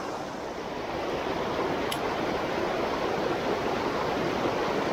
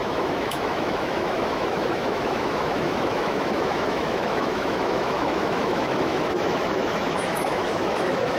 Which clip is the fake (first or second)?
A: second